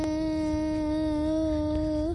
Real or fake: real